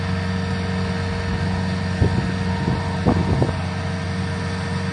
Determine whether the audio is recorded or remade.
recorded